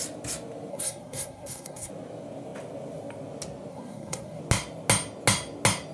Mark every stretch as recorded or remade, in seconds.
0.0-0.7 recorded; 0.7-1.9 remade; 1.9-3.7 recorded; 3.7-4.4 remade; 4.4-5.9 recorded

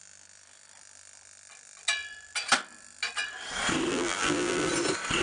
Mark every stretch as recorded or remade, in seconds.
0.0-3.9 recorded; 3.9-4.7 remade; 4.7-5.2 recorded

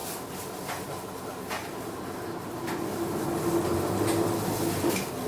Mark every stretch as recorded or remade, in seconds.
0.0-5.3 recorded

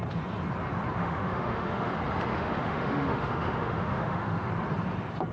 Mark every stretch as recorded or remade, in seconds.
0.0-1.0 recorded; 1.0-1.9 remade; 1.9-2.3 recorded; 2.3-4.5 remade; 4.5-5.3 recorded

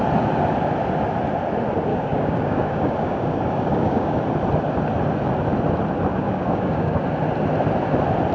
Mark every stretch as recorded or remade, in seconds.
0.0-1.9 recorded; 1.9-4.2 remade; 4.2-6.1 recorded; 6.1-7.0 remade; 7.0-8.3 recorded